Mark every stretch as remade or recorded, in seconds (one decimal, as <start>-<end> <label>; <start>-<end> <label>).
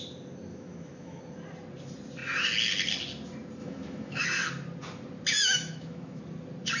0.0-0.5 recorded; 0.5-1.2 remade; 1.2-3.6 recorded; 3.6-4.2 remade; 4.2-5.4 recorded; 5.4-6.2 remade; 6.2-6.8 recorded